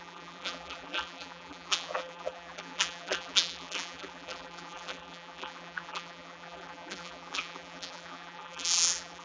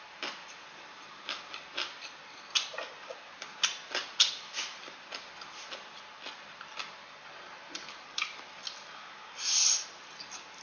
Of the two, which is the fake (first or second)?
first